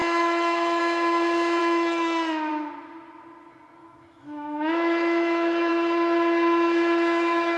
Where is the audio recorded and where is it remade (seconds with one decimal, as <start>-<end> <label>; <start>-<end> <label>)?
0.0-0.8 remade; 0.8-1.6 recorded; 1.6-2.5 remade; 2.5-3.8 recorded; 3.8-5.7 remade; 5.7-7.6 recorded